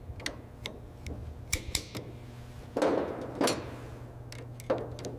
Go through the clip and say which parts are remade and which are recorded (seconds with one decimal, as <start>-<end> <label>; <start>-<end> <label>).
0.0-5.2 recorded